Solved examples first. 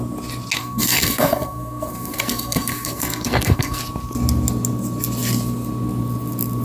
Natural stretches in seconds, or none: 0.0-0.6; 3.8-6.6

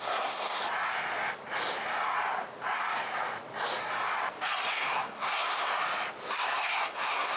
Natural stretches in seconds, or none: 0.6-4.7; 5.7-6.3

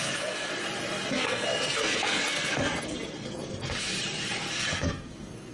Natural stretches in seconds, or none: 0.5-1.1; 3.9-4.5